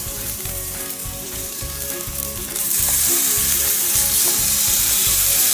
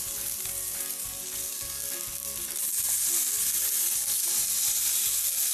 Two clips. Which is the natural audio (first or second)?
second